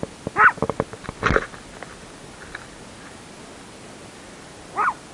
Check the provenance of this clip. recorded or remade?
recorded